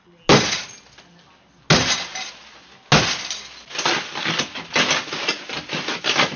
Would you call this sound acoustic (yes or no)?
yes